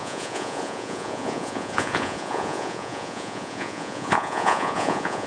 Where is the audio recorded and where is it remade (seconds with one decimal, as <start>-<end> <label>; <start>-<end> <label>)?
0.0-5.3 remade